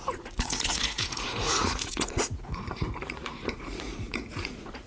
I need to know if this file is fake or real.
fake